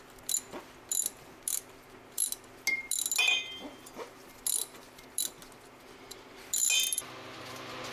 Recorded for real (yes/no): yes